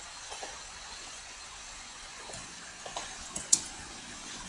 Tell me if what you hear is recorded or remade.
remade